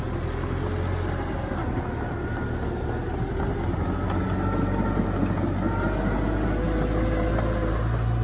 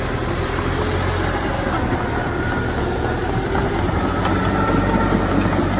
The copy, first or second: second